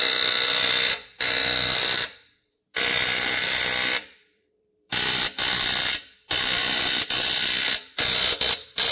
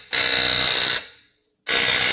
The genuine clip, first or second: second